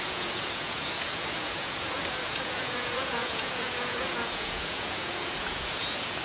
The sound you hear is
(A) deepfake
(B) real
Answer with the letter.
A